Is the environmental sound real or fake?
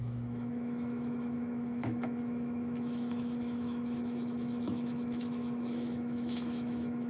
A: fake